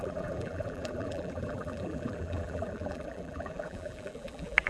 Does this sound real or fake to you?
fake